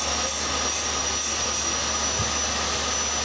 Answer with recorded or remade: recorded